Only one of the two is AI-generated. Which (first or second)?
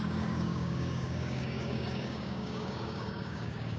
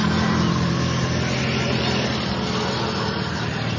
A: first